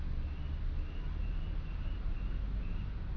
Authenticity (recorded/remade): recorded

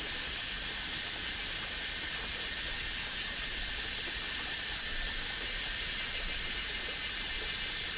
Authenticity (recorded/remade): recorded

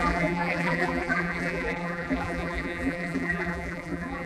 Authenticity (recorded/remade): remade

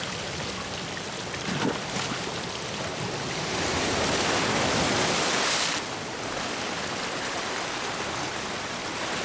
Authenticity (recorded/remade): recorded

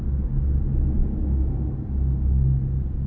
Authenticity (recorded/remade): recorded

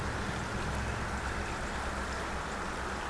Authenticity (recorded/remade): recorded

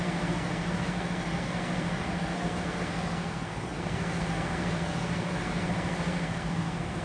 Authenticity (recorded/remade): remade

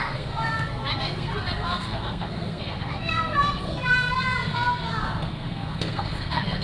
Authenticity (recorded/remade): remade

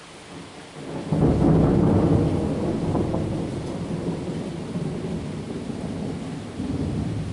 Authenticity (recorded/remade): recorded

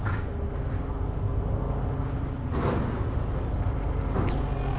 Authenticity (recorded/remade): recorded